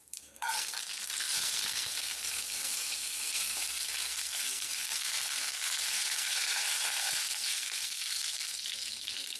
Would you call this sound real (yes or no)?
no